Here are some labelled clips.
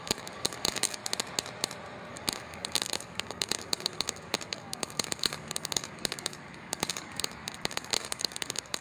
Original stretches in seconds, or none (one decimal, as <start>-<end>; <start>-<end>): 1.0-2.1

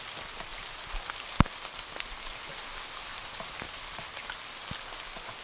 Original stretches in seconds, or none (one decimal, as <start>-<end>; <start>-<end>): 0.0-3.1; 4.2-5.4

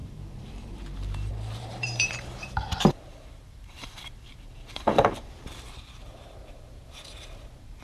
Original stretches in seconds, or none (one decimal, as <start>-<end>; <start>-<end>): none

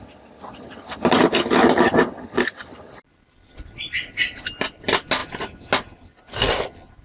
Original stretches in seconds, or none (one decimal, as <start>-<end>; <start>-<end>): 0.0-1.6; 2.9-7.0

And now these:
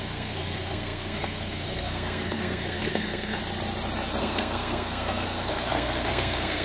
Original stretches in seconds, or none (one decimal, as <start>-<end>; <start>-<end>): 3.4-4.2

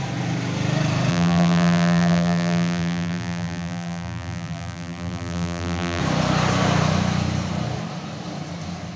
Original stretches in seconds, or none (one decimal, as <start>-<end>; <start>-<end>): 0.0-1.1; 6.0-9.0

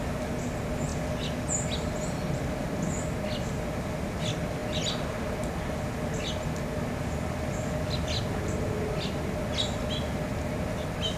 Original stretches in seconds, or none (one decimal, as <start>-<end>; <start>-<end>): 0.0-11.2